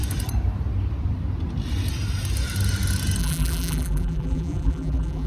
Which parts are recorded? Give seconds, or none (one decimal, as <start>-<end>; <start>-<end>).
0.0-3.2